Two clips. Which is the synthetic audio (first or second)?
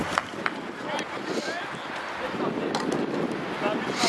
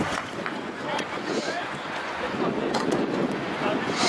second